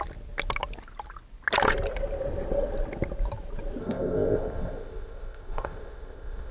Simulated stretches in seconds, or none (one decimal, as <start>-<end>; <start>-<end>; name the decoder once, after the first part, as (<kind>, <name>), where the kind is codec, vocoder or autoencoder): 3.8-6.5 (codec, ZipCodec)